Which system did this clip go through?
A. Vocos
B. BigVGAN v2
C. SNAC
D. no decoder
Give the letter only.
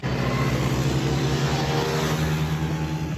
D